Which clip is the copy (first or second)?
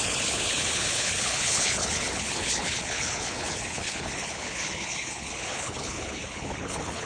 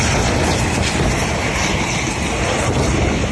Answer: first